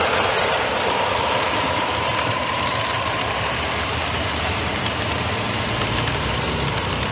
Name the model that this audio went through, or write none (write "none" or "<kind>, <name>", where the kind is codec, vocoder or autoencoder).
vocoder, BigVGAN v2